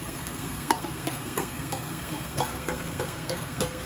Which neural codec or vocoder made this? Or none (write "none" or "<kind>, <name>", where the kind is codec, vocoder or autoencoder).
codec, SNAC